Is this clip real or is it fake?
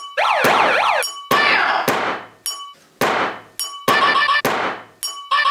real